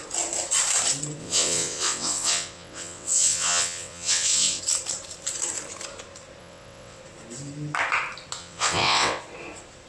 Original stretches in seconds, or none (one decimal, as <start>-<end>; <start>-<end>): 0.0-1.2; 4.6-6.4; 7.0-8.4; 9.2-9.9